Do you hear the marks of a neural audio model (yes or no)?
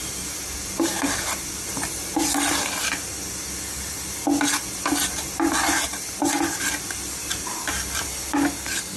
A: no